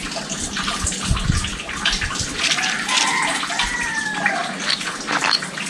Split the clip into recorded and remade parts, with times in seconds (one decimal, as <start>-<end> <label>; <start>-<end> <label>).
0.0-4.4 remade; 4.4-5.1 recorded; 5.1-5.7 remade